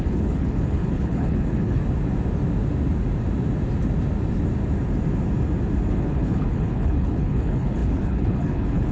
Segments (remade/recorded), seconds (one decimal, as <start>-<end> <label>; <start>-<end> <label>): 0.0-1.8 remade; 1.8-5.9 recorded; 5.9-8.9 remade